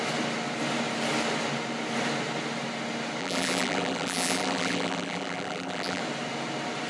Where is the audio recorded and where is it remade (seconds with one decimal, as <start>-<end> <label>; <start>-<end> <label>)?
0.0-3.2 recorded; 3.2-6.0 remade; 6.0-6.9 recorded